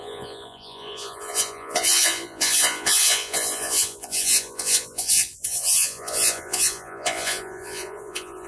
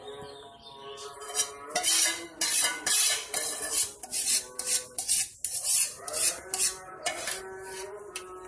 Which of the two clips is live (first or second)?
second